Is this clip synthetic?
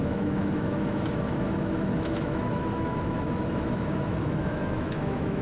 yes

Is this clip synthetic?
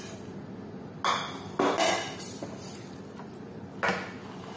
no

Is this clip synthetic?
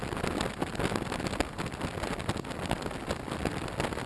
no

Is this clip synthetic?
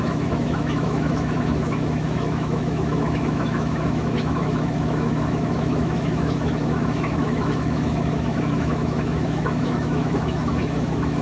yes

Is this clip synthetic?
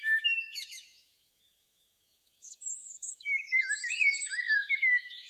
yes